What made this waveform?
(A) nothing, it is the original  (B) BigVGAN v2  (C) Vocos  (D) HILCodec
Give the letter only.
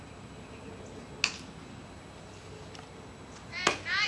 A